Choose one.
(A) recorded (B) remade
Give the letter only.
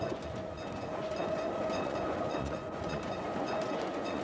B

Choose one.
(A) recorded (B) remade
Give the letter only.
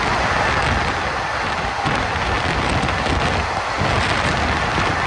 A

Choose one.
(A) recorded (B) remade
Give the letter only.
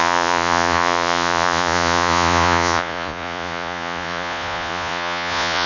B